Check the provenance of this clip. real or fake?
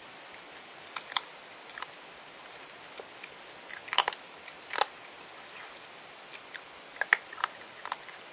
real